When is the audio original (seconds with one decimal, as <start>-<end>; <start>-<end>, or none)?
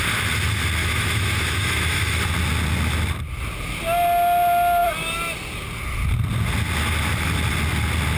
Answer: 0.0-0.8; 2.2-8.2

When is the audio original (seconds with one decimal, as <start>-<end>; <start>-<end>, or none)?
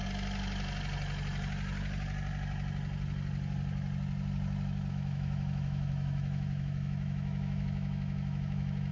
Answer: 0.0-4.9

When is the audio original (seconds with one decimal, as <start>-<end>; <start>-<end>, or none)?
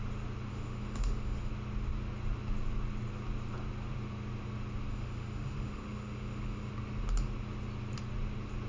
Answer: 0.0-0.5; 1.5-4.9; 6.7-8.7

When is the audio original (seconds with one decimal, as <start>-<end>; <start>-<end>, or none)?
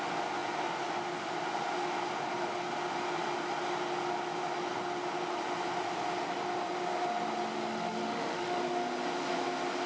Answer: 0.0-7.7; 8.6-9.9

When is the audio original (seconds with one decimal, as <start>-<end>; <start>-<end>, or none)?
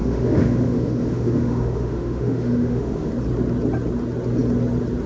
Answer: 3.1-5.1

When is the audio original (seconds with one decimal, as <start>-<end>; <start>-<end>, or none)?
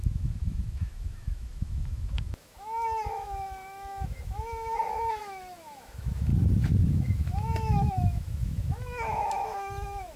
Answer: 6.3-6.9